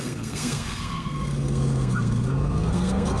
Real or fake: fake